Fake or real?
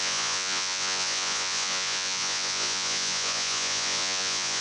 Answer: fake